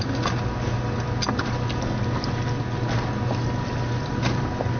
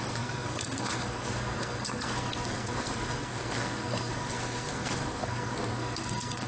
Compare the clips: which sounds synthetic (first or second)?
second